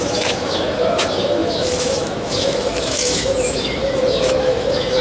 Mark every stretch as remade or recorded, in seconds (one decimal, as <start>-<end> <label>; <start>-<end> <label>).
0.0-5.0 remade